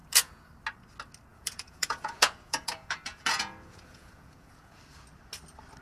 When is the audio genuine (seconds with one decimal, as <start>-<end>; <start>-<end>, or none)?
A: 0.5-1.3; 4.8-5.8

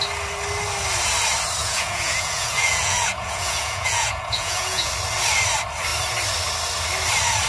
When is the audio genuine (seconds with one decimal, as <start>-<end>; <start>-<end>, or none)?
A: 0.0-1.6; 4.9-7.5

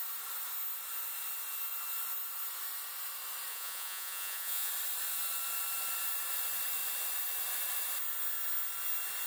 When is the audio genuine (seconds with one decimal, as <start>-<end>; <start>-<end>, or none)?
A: 0.0-3.5; 4.7-9.3

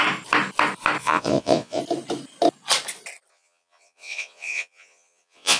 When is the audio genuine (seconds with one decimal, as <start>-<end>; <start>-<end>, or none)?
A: 0.0-1.0; 1.8-3.3